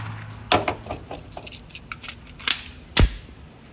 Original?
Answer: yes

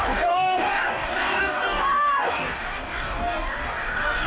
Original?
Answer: no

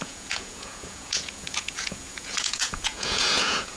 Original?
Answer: no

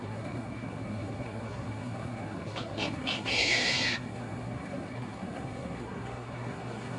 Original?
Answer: no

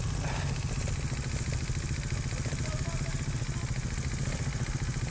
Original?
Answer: yes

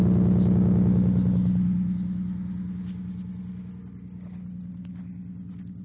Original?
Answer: yes